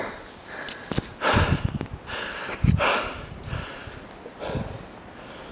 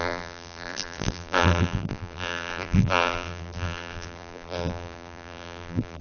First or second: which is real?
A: first